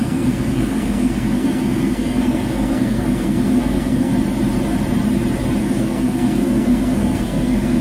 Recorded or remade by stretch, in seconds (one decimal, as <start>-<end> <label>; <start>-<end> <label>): 0.0-4.1 remade; 4.1-5.6 recorded; 5.6-7.8 remade